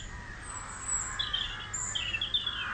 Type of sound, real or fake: real